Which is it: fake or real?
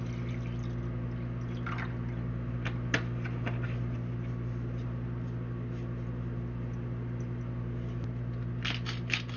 real